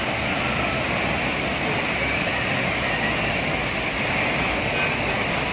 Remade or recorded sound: recorded